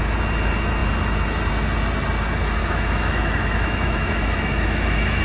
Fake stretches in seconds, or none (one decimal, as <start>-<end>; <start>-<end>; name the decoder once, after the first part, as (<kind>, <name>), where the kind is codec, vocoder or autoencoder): 2.6-5.2 (autoencoder, DAC-VAE)